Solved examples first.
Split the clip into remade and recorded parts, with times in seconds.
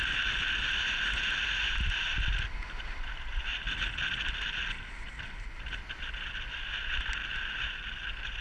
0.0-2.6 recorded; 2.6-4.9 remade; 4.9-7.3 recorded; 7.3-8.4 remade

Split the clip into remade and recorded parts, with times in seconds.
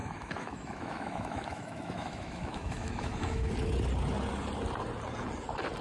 0.0-3.5 remade; 3.5-5.8 recorded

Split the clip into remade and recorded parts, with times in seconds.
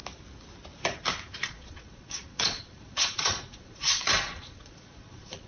0.0-1.3 recorded; 1.3-5.5 remade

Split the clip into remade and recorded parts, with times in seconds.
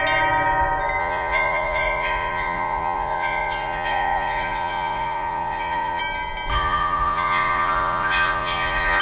0.0-1.0 recorded; 1.0-6.0 remade; 6.0-6.5 recorded; 6.5-9.0 remade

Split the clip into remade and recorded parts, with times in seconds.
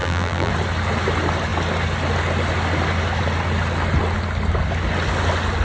0.0-0.5 remade; 0.5-5.6 recorded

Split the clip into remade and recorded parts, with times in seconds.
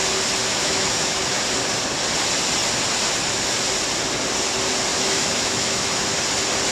0.0-0.5 recorded; 0.5-1.4 remade; 1.4-4.9 recorded; 4.9-6.2 remade; 6.2-6.7 recorded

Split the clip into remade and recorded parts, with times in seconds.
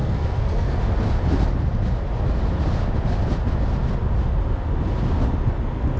0.0-0.8 remade; 0.8-6.0 recorded